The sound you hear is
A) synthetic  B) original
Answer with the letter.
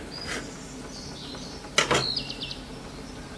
B